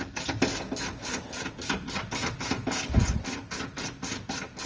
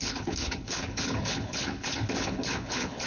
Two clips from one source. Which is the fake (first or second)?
second